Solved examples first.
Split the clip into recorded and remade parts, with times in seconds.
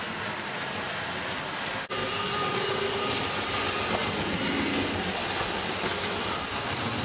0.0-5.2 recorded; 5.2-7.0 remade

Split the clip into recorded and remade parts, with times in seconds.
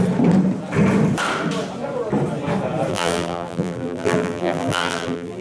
0.0-2.9 recorded; 2.9-5.4 remade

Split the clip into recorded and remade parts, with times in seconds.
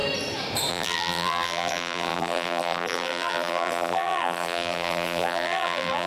0.0-0.7 recorded; 0.7-6.1 remade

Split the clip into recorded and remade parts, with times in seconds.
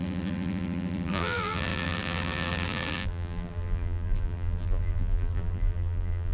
0.0-6.3 remade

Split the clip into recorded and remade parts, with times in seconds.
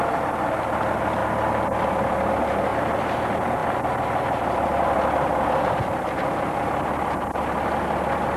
0.0-1.2 recorded; 1.2-2.3 remade; 2.3-2.7 recorded; 2.7-3.2 remade; 3.2-3.6 recorded; 3.6-6.3 remade; 6.3-8.4 recorded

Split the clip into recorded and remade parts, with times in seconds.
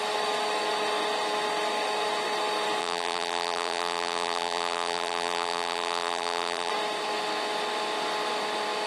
0.0-2.8 recorded; 2.8-6.7 remade; 6.7-8.9 recorded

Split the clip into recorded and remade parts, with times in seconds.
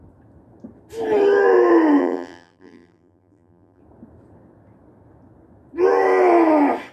0.0-2.0 recorded; 2.0-3.8 remade; 3.8-6.9 recorded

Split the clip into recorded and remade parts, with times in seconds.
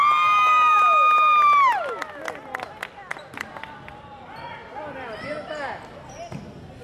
0.0-3.1 recorded; 3.1-5.3 remade; 5.3-6.8 recorded